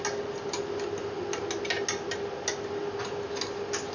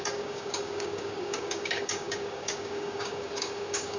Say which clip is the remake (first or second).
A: second